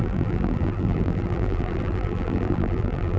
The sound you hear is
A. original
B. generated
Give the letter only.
B